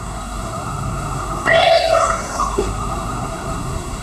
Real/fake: fake